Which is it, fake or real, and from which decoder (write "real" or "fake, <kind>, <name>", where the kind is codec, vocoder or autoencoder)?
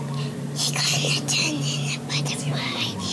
real